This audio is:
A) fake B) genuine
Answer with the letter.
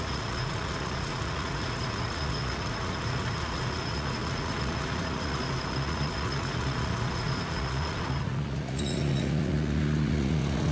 A